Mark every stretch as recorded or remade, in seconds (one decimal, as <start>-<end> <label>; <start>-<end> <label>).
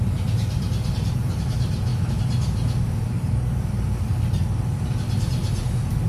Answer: 0.0-6.1 remade